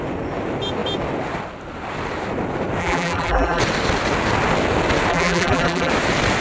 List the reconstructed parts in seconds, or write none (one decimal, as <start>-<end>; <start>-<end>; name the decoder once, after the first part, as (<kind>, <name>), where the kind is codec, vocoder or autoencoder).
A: 2.8-3.6 (vocoder, BigVGAN v2); 5.1-5.9